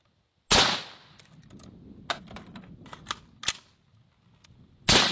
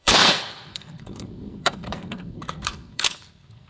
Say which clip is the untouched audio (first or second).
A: first